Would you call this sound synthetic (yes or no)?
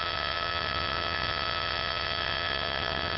yes